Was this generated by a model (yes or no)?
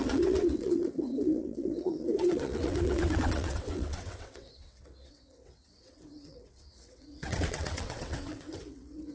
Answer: yes